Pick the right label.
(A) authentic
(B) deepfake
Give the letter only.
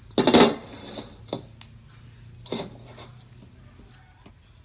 A